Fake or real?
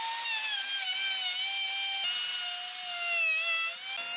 real